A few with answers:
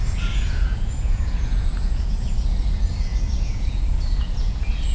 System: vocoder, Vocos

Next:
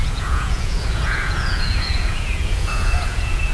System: vocoder, Vocos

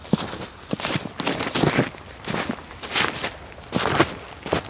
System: none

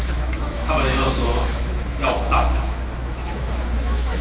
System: autoencoder, DAC-VAE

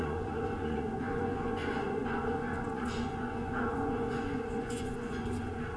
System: vocoder, Vocos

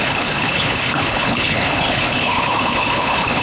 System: codec, HILCodec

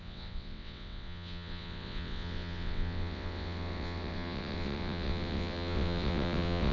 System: vocoder, WaveNeXt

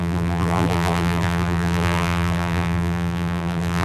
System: vocoder, BigVGAN v2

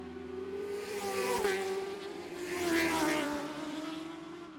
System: vocoder, BigVGAN v2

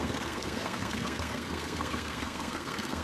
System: codec, SNAC